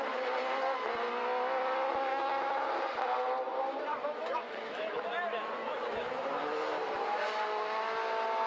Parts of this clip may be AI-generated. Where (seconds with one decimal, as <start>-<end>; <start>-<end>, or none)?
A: 2.1-2.8; 3.9-5.1; 5.6-6.9